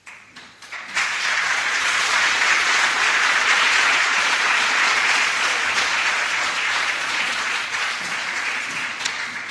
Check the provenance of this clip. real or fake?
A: fake